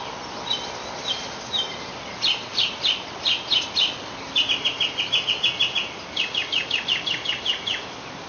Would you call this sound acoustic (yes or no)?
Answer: yes